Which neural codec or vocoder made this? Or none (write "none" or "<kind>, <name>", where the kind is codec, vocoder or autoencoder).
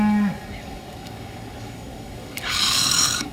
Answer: codec, DAC